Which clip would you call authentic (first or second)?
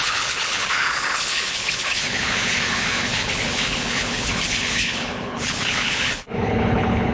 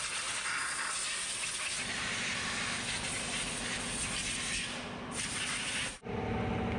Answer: second